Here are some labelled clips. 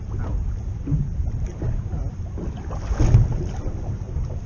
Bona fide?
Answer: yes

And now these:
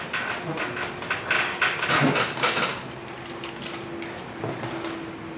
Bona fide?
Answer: yes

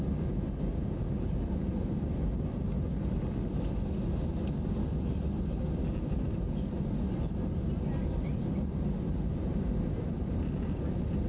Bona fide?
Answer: yes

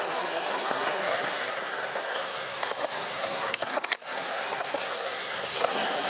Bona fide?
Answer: no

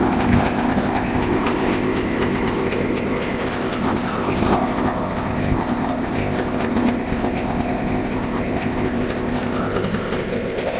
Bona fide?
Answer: no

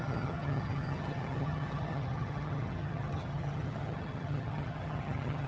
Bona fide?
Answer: no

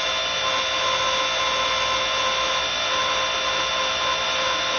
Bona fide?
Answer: yes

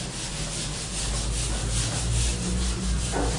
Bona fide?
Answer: yes